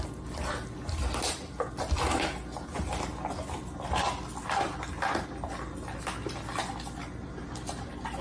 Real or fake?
real